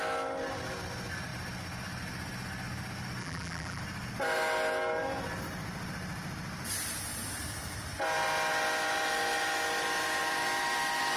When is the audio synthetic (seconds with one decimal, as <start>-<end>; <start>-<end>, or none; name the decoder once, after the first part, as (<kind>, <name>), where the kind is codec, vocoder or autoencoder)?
3.2-3.8 (vocoder, BigVGAN v2)